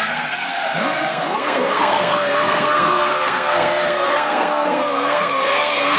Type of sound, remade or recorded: remade